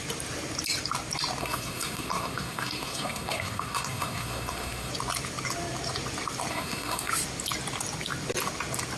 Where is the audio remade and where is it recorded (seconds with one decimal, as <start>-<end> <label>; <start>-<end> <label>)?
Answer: 0.0-1.4 recorded; 1.4-4.9 remade; 4.9-6.5 recorded; 6.5-7.1 remade; 7.1-9.0 recorded